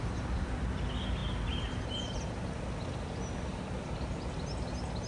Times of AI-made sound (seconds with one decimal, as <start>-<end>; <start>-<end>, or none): none